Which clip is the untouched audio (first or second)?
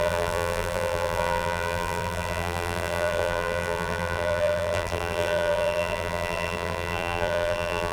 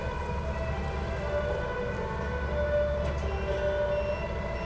second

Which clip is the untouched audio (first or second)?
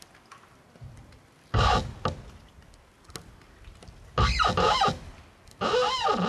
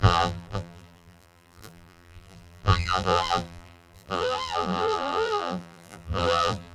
first